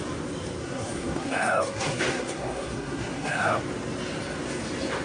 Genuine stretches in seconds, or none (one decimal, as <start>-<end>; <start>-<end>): 0.0-0.6; 3.6-5.0